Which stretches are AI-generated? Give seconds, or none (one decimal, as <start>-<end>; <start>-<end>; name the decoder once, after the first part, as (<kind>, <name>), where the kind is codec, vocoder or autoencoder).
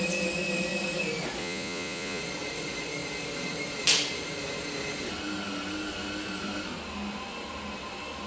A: 1.4-2.2 (vocoder, Vocos)